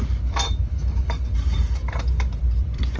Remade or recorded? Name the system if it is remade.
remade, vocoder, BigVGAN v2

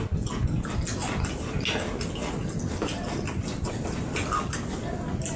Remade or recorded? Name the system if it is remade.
recorded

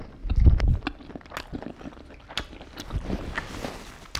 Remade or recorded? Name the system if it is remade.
recorded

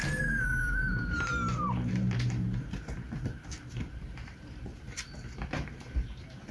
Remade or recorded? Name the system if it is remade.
remade, vocoder, BigVGAN v2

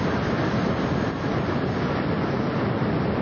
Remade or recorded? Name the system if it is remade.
recorded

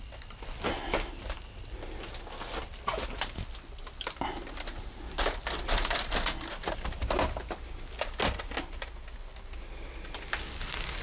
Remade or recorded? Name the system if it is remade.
recorded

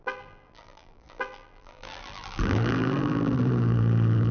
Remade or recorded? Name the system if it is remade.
remade, vocoder, BigVGAN v2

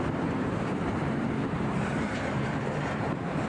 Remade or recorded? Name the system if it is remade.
remade, vocoder, BigVGAN v2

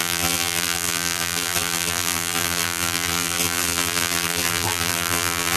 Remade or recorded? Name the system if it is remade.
remade, vocoder, BigVGAN v2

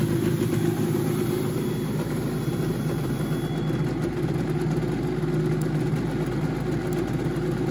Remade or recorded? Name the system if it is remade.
recorded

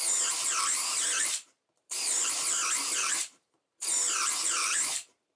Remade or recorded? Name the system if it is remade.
remade, vocoder, BigVGAN v2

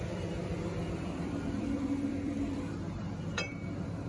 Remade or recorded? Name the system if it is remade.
remade, vocoder, BigVGAN v2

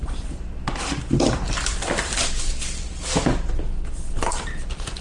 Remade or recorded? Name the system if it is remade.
remade, vocoder, BigVGAN v2